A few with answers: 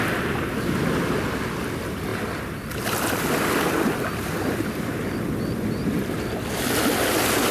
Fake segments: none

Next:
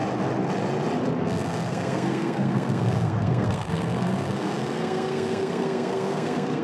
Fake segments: 1.2-6.6 (codec, SNAC)

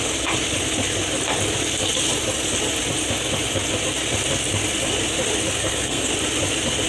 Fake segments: 5.6-6.1 (codec, SNAC)

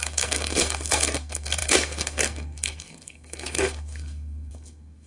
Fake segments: 0.0-5.1 (codec, SNAC)